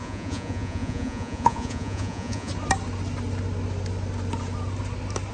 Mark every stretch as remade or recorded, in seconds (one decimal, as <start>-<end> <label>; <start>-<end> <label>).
0.0-2.5 remade; 2.5-5.3 recorded